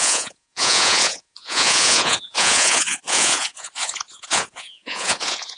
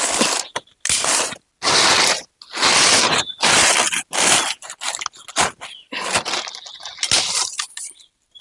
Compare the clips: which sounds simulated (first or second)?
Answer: first